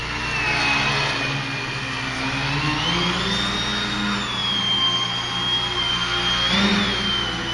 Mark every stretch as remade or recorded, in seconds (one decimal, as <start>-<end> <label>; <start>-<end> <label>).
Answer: 0.0-7.5 recorded